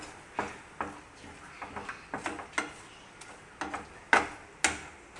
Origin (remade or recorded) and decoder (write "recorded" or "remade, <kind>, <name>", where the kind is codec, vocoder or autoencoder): recorded